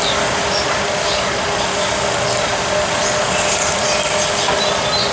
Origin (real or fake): real